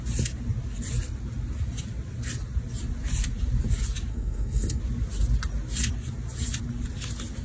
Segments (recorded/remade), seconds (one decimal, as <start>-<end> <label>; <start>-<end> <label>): 0.0-4.1 recorded; 4.1-4.8 remade; 4.8-7.4 recorded